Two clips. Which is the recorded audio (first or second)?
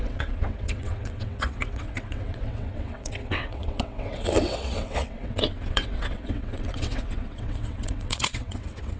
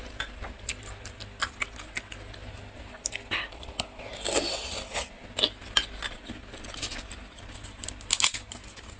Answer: second